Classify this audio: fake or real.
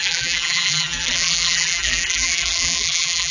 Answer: fake